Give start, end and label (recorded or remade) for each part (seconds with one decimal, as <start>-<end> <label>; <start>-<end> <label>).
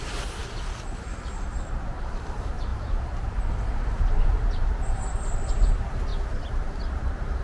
0.0-0.4 remade; 0.4-1.5 recorded; 1.5-6.1 remade; 6.1-6.8 recorded; 6.8-7.4 remade